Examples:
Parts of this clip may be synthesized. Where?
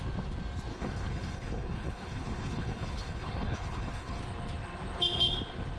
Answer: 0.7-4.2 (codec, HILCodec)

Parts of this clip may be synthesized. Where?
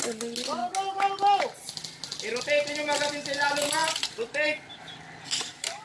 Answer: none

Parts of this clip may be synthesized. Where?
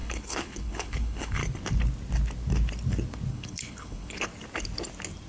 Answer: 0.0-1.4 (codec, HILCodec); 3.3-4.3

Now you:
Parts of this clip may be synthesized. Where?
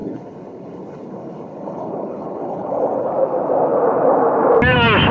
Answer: 0.0-3.1 (codec, HILCodec)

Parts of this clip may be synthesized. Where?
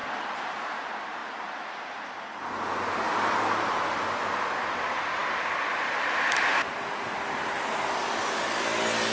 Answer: none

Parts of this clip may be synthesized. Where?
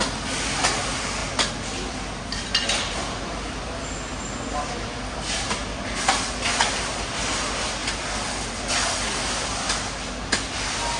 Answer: none